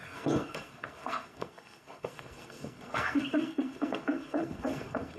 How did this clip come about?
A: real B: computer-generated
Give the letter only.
B